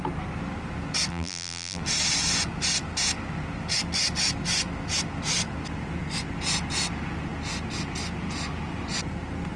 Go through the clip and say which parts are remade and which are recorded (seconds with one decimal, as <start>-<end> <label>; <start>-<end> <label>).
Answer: 0.0-1.1 recorded; 1.1-1.8 remade; 1.8-9.6 recorded

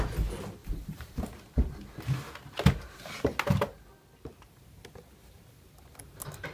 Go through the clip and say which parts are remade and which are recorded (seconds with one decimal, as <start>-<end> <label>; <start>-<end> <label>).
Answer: 0.0-0.6 recorded; 0.6-1.2 remade; 1.2-6.5 recorded

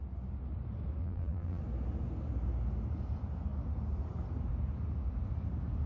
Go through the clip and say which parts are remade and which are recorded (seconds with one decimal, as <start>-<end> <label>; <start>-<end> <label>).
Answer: 0.0-1.0 recorded; 1.0-1.6 remade; 1.6-5.9 recorded

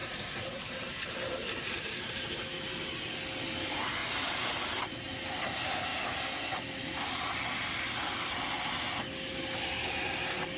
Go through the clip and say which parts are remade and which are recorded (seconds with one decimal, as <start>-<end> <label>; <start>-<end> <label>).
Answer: 0.0-2.3 remade; 2.3-4.0 recorded; 4.0-4.5 remade; 4.5-10.6 recorded

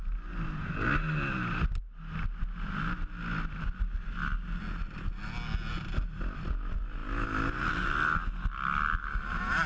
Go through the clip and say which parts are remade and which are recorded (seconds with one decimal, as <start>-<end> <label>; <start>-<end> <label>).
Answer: 0.0-9.7 recorded

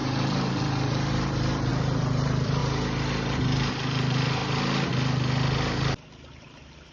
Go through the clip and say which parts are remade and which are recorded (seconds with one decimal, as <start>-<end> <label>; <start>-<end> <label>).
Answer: 0.0-2.6 remade; 2.6-3.7 recorded; 3.7-4.4 remade; 4.4-6.4 recorded; 6.4-6.9 remade